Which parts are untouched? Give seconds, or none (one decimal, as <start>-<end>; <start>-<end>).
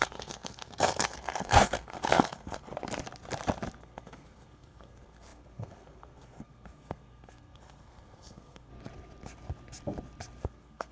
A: 2.7-3.8; 8.7-10.4